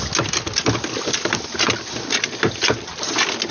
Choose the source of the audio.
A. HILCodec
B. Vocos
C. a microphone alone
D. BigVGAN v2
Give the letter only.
C